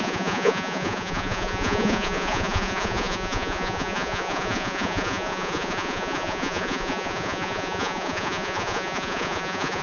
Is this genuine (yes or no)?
no